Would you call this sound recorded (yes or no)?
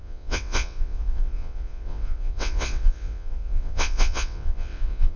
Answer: no